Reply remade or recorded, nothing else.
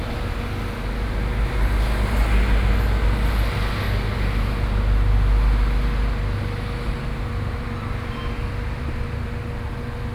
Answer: recorded